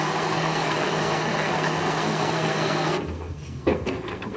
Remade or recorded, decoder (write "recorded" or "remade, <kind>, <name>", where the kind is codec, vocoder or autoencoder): remade, codec, SNAC